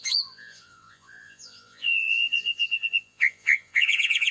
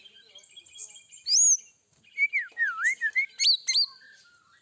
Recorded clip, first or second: second